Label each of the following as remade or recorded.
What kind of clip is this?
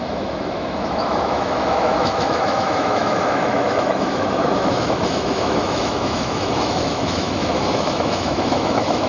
remade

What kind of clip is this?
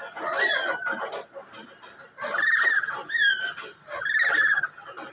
recorded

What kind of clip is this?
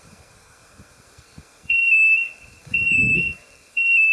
remade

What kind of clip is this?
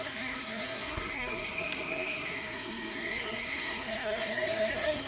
remade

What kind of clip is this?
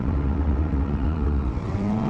remade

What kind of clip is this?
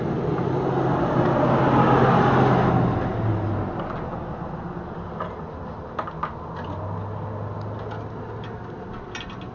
recorded